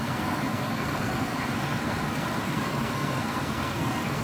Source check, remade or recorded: remade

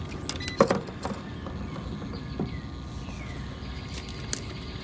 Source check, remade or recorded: recorded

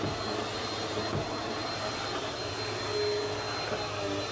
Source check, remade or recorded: recorded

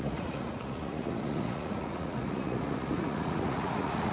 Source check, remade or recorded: remade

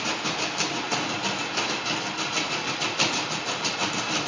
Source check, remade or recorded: recorded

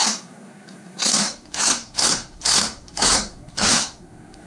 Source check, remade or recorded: remade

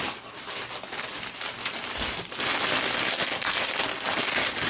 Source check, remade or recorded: recorded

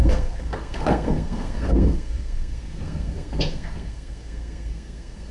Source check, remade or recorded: remade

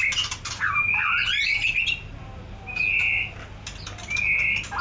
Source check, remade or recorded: recorded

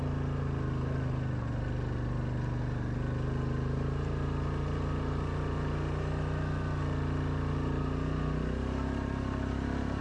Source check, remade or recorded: recorded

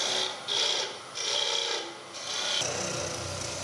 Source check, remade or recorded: recorded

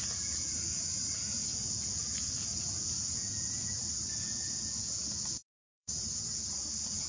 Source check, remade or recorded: remade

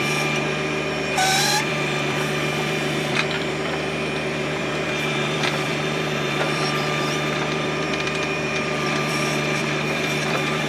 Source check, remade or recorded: remade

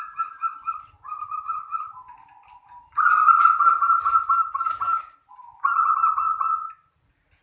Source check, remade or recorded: recorded